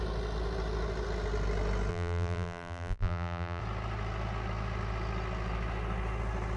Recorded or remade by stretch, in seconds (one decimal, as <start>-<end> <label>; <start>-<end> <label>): 0.0-1.9 recorded; 1.9-3.6 remade; 3.6-6.6 recorded